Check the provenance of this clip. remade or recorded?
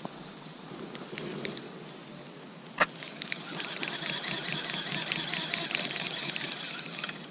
recorded